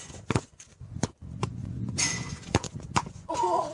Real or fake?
fake